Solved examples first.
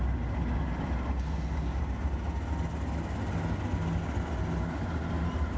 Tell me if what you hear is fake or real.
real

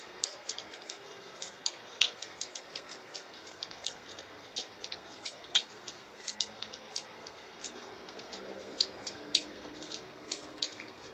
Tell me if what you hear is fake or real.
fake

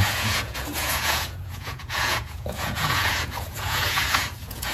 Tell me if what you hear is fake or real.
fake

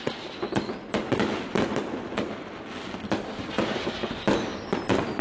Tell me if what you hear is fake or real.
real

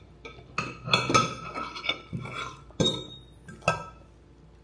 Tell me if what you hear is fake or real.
real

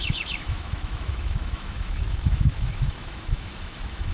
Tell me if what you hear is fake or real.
fake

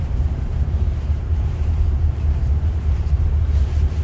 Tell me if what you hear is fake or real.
fake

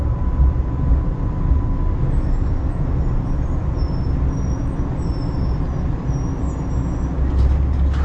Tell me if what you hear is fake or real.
real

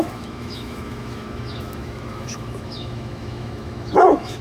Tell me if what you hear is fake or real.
fake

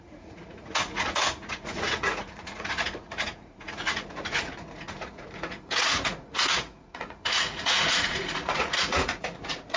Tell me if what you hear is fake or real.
fake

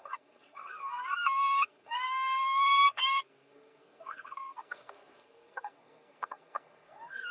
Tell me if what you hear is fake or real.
fake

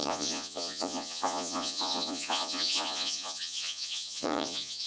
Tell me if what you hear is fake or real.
fake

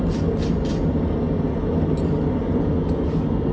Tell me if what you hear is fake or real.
real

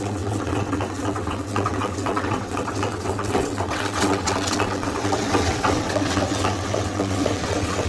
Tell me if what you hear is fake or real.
fake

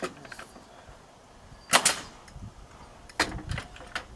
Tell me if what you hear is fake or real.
real